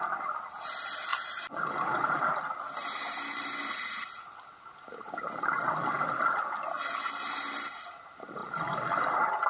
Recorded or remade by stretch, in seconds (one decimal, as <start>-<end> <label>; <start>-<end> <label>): 0.0-9.5 recorded